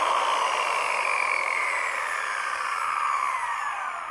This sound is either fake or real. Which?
fake